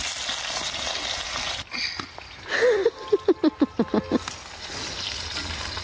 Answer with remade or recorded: recorded